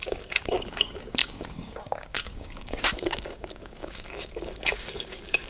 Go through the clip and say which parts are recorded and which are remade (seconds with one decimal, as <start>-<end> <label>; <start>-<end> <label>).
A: 0.0-5.5 remade